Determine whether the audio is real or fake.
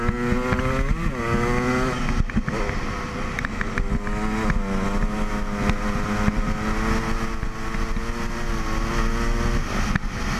real